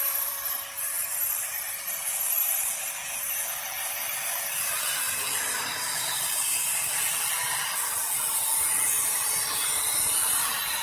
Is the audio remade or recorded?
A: remade